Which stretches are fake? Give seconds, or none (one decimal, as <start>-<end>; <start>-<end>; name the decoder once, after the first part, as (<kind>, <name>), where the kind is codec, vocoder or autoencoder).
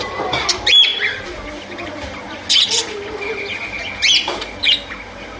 none